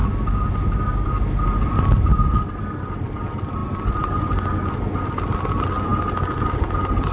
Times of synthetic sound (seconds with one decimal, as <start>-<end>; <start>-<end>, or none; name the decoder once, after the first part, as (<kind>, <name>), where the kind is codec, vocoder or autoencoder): none